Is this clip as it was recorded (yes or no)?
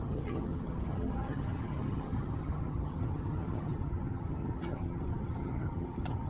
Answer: no